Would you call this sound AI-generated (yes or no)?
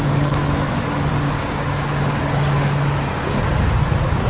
no